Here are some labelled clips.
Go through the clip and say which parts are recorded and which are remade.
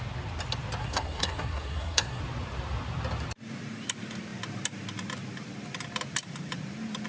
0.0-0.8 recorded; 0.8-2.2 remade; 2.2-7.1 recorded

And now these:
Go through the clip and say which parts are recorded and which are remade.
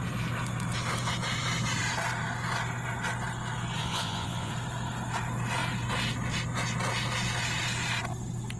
0.0-3.8 recorded; 3.8-4.5 remade; 4.5-8.6 recorded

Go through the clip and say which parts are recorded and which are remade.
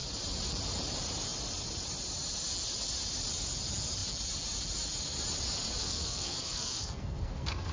0.0-5.8 recorded; 5.8-7.7 remade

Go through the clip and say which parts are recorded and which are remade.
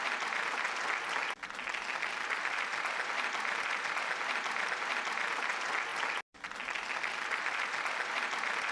0.0-8.7 recorded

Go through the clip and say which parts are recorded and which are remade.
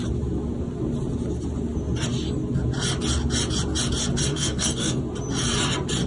0.0-4.3 recorded; 4.3-5.0 remade; 5.0-6.1 recorded